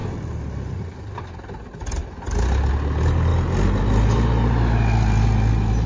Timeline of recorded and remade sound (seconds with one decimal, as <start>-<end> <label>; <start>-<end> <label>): 0.0-0.8 remade; 0.8-5.9 recorded